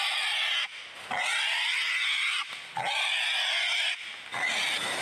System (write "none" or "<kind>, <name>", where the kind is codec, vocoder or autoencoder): none